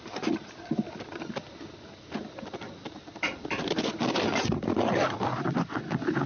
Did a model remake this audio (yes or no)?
no